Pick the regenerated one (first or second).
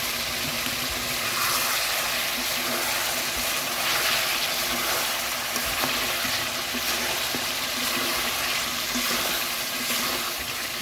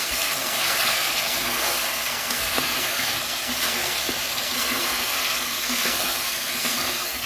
second